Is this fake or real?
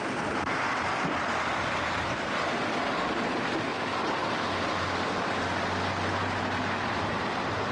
real